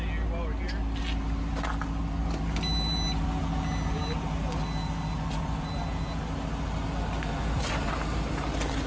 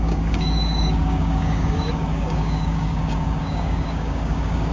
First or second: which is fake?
second